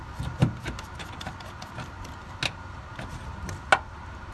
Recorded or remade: recorded